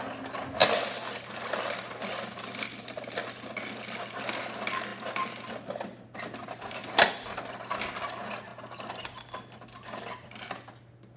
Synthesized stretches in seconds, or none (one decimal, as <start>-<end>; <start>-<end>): none